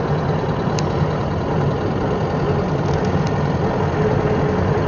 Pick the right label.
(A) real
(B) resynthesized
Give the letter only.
A